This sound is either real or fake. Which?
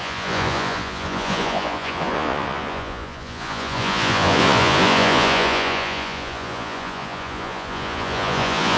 fake